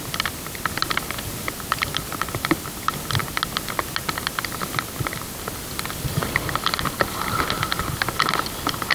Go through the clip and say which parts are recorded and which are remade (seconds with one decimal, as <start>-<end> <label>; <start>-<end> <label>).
0.0-8.9 recorded